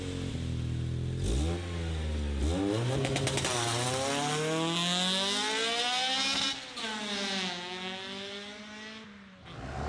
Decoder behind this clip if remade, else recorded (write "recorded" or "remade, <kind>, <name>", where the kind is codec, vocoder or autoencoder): recorded